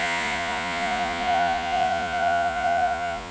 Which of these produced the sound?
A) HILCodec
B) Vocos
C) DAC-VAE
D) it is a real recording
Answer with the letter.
B